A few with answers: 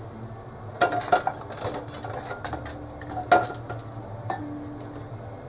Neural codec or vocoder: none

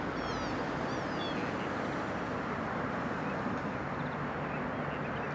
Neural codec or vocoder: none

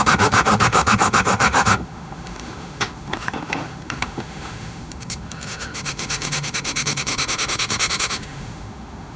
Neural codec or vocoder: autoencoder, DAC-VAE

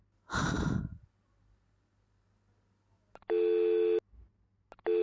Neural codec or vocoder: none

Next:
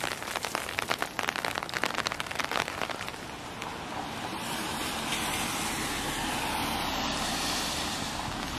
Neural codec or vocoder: none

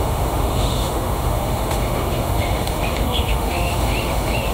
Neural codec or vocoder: autoencoder, DAC-VAE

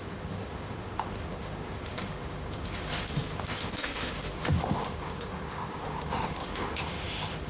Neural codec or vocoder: autoencoder, DAC-VAE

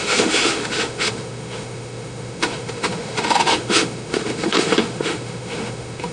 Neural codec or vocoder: autoencoder, DAC-VAE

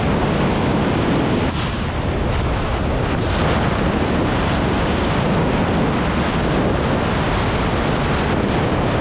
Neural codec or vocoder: none